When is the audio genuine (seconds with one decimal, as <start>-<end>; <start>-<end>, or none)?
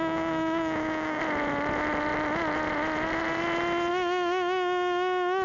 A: 1.2-5.4